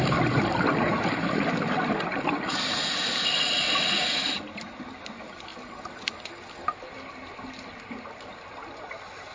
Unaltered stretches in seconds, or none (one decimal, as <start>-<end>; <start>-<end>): 0.0-9.3